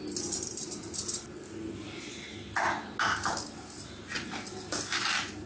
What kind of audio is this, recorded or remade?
recorded